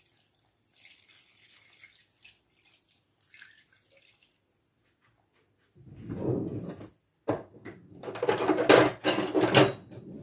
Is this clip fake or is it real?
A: real